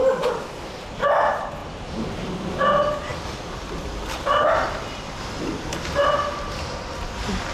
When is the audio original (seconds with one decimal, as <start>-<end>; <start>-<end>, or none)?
0.8-7.5